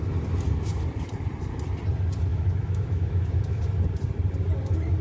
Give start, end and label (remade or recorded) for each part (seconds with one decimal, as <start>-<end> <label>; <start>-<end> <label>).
0.0-2.3 recorded; 2.3-3.6 remade; 3.6-5.0 recorded